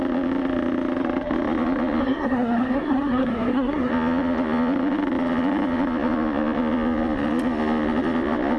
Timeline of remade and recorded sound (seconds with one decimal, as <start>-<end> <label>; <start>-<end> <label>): 0.0-2.0 recorded; 2.0-3.9 remade; 3.9-8.6 recorded

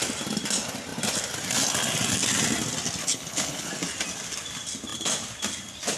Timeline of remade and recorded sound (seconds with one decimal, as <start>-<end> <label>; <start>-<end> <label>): 0.0-3.0 recorded; 3.0-3.7 remade; 3.7-6.0 recorded

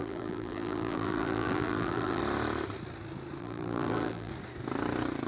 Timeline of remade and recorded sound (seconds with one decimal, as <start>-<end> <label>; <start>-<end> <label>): 0.0-2.2 remade; 2.2-3.4 recorded; 3.4-4.3 remade; 4.3-5.3 recorded

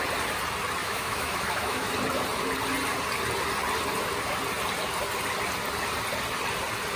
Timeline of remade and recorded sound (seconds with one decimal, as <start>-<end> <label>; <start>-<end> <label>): 0.0-0.8 recorded; 0.8-1.9 remade; 1.9-7.0 recorded

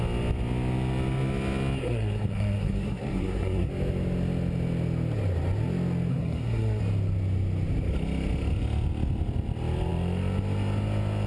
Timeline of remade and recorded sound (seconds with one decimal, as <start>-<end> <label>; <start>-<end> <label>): 0.0-1.8 recorded; 1.8-3.7 remade; 3.7-6.1 recorded; 6.1-6.8 remade; 6.8-11.3 recorded

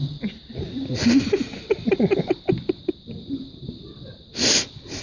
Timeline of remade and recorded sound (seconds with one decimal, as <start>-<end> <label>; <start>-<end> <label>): 0.0-5.0 recorded

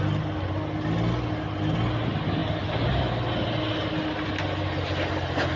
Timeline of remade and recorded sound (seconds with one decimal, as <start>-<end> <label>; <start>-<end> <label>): 0.0-5.6 recorded